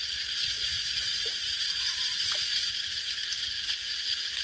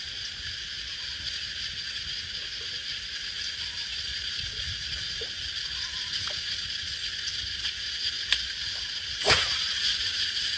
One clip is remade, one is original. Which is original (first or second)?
second